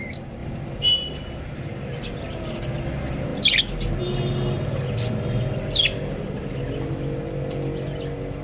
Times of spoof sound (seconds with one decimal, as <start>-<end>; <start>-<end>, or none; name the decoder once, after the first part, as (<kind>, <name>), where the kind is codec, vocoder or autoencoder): none